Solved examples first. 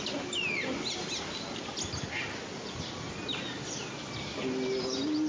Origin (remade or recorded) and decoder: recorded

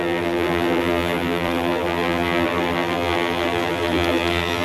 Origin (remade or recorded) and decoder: remade, vocoder, BigVGAN v2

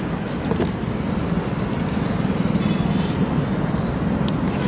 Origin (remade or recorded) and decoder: recorded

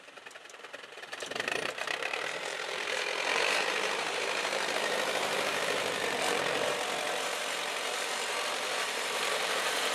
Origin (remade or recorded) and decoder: remade, vocoder, BigVGAN v2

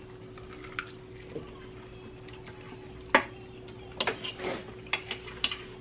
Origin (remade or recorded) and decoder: recorded